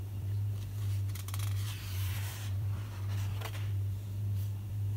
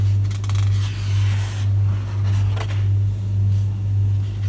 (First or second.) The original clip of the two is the second